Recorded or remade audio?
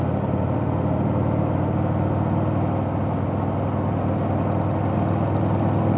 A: recorded